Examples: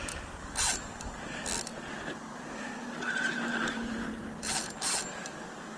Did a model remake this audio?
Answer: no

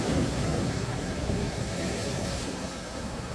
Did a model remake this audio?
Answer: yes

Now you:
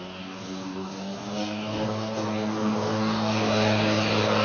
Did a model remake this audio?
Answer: yes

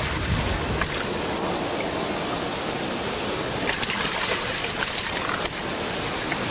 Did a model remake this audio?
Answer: no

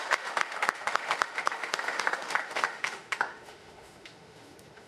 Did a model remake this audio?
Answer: yes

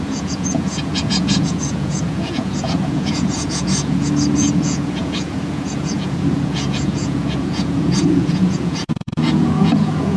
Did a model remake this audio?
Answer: yes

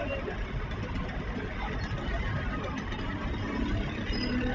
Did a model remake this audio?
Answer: no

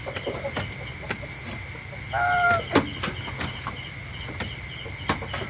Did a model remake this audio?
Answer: no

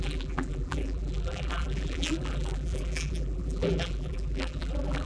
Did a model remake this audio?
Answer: yes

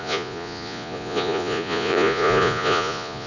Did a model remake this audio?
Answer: yes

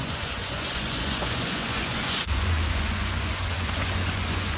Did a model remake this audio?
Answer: yes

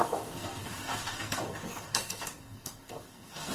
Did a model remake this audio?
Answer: yes